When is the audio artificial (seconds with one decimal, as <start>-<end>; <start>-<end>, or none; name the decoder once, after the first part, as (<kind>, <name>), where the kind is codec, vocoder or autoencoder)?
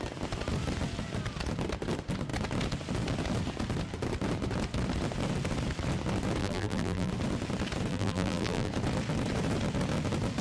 6.4-7.1 (vocoder, BigVGAN v2); 7.9-8.7